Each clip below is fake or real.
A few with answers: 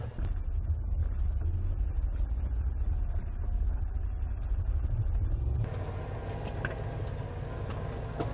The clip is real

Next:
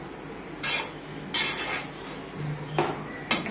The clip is real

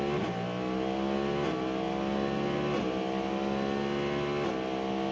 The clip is real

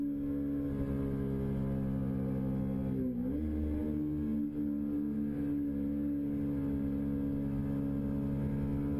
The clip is real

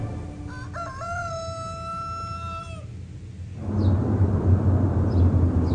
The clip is real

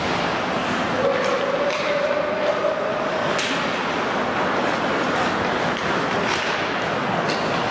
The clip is real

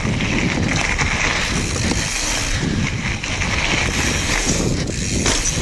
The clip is real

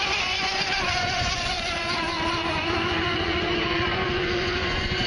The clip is fake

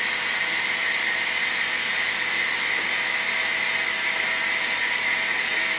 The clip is real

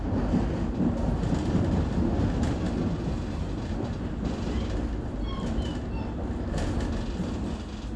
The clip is real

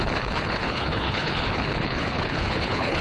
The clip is fake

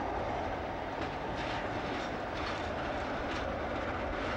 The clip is real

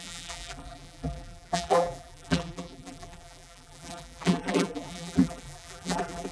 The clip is fake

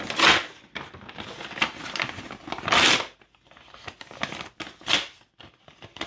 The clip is real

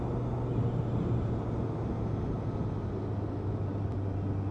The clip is real